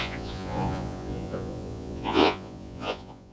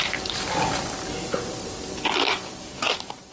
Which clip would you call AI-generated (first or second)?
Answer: first